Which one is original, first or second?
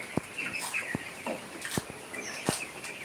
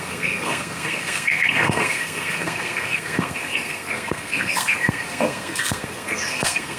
first